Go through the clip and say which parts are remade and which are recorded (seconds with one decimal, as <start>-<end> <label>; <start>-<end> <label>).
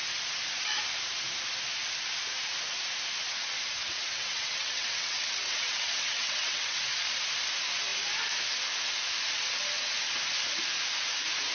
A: 0.0-3.8 recorded; 3.8-6.8 remade; 6.8-11.5 recorded